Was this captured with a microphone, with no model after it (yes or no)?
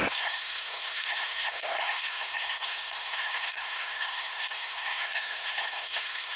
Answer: no